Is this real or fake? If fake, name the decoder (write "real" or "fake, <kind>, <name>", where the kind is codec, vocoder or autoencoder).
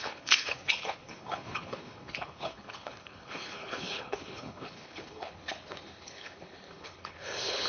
fake, codec, HILCodec